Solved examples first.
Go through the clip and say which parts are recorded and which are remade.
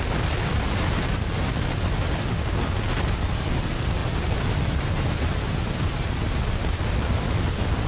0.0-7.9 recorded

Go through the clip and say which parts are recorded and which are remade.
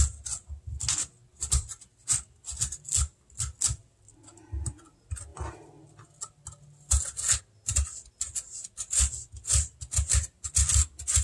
0.0-11.2 recorded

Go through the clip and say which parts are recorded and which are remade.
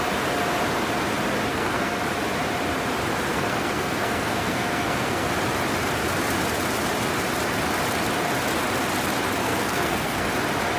0.0-1.5 recorded; 1.5-2.0 remade; 2.0-3.3 recorded; 3.3-5.3 remade; 5.3-9.4 recorded; 9.4-10.3 remade; 10.3-10.8 recorded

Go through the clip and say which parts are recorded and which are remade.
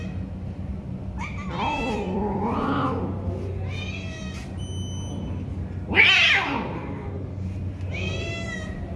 0.0-9.0 recorded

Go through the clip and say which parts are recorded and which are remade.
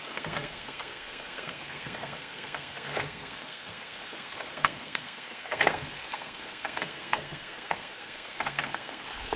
0.0-9.4 remade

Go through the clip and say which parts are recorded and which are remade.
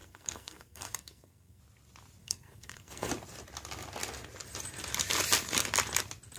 0.0-1.6 remade; 1.6-2.2 recorded; 2.2-3.1 remade; 3.1-6.4 recorded